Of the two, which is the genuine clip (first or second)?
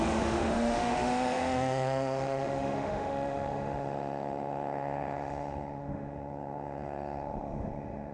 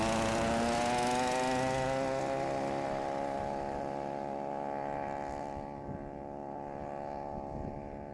second